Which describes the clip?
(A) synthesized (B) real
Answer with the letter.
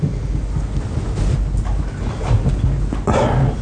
B